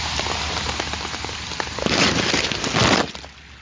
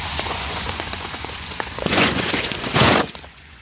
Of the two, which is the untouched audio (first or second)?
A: first